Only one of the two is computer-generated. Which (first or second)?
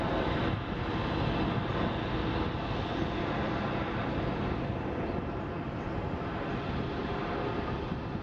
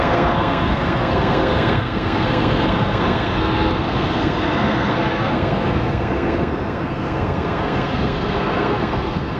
second